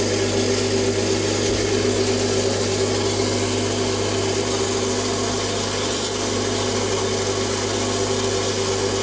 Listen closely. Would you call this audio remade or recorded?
recorded